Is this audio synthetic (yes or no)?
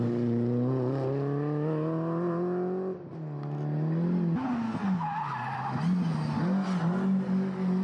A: no